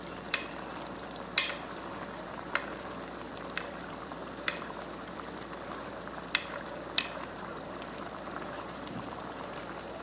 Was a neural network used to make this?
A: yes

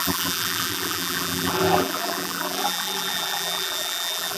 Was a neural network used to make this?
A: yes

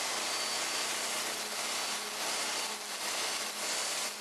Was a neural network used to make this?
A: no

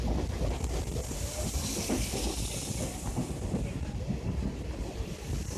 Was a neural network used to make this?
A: no